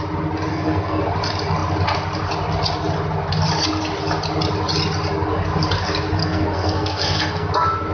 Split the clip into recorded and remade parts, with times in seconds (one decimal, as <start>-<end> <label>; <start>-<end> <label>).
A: 0.0-0.5 recorded; 0.5-1.0 remade; 1.0-6.2 recorded; 6.2-7.5 remade; 7.5-7.9 recorded